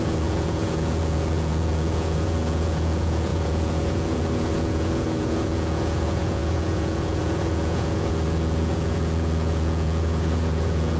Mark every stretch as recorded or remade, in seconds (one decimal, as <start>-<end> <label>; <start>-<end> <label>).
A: 0.0-11.0 remade